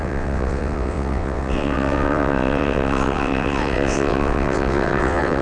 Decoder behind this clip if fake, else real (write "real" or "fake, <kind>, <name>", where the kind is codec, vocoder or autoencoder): fake, vocoder, WaveNeXt